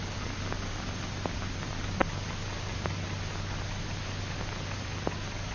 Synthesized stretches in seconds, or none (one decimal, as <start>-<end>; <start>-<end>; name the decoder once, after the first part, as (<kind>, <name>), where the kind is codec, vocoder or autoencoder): none